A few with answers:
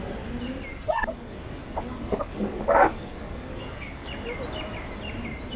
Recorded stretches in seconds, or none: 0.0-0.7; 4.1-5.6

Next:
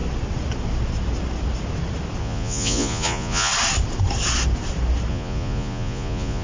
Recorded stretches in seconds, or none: 0.0-2.2; 3.5-5.1

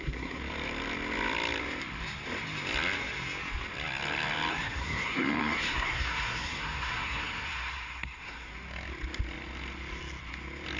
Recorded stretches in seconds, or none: 0.4-4.5; 8.5-10.8